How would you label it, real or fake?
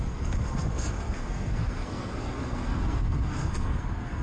fake